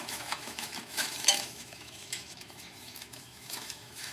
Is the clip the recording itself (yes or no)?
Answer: no